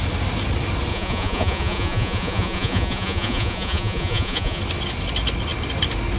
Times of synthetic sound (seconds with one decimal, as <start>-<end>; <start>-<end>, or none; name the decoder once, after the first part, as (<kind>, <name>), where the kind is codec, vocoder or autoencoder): 0.9-4.6 (vocoder, Vocos)

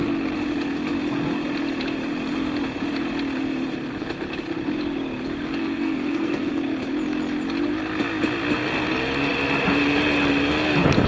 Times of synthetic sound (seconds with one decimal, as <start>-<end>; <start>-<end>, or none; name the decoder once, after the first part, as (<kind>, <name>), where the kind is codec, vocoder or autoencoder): 5.6-6.6 (codec, SNAC)

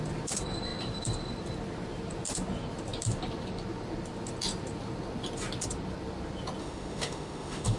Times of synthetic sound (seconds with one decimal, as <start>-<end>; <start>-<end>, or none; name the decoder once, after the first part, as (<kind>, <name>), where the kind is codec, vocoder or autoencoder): 6.6-7.8 (autoencoder, DAC-VAE)

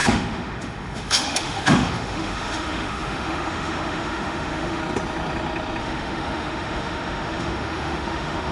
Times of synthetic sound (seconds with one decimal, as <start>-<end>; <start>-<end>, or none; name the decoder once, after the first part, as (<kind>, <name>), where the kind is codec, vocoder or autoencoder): 0.0-4.8 (autoencoder, DAC-VAE); 5.8-8.5

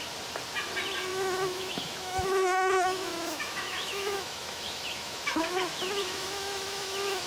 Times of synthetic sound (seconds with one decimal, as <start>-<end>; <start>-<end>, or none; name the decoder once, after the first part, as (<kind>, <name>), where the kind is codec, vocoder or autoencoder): 1.1-5.5 (autoencoder, DAC-VAE); 6.0-7.3

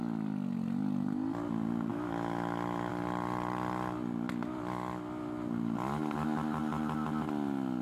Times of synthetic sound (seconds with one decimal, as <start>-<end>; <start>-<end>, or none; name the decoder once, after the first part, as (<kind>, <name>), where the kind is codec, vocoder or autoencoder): 1.9-2.9 (autoencoder, DAC-VAE)

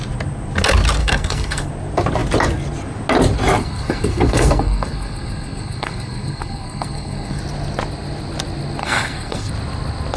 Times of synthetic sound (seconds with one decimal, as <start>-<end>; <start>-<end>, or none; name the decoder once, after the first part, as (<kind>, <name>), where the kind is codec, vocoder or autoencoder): 1.0-1.7 (codec, SNAC); 3.6-7.4; 8.8-9.5

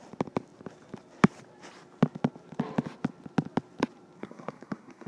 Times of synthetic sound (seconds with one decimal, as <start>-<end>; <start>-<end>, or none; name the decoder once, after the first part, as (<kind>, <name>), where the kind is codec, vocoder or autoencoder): 4.2-5.1 (codec, SNAC)